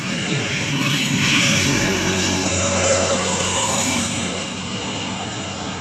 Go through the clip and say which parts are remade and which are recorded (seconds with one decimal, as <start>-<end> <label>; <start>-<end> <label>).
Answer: 0.0-5.8 remade